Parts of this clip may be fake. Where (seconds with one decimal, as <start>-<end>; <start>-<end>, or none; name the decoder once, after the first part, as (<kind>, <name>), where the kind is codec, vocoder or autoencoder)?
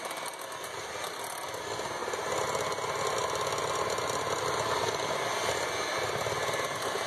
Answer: none